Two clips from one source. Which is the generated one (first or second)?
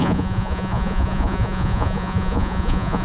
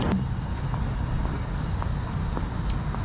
first